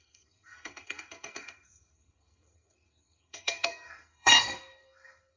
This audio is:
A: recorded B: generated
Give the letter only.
B